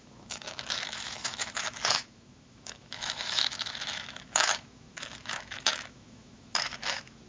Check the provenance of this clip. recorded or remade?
remade